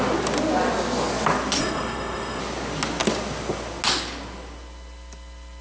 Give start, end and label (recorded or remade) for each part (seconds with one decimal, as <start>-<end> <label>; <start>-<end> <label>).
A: 0.0-1.6 recorded; 1.6-2.4 remade; 2.4-5.6 recorded